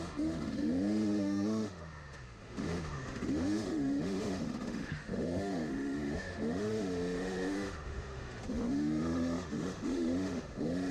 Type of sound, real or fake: fake